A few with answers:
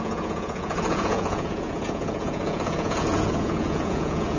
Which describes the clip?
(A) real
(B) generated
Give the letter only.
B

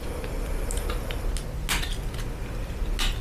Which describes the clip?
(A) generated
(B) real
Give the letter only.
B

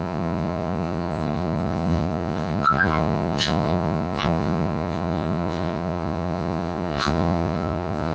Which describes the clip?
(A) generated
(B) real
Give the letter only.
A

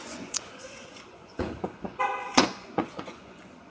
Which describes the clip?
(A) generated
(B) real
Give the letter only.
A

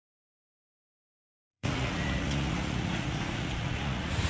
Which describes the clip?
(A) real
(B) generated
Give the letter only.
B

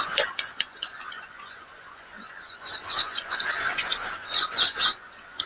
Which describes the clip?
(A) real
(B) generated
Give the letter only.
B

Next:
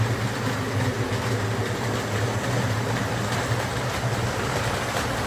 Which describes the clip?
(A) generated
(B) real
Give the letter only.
B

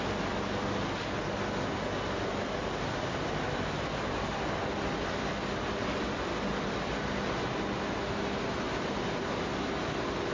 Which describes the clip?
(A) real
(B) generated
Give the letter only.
A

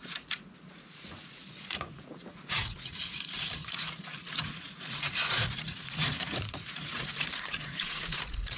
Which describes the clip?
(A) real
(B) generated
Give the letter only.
B